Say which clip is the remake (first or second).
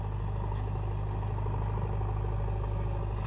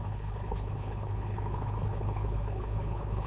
second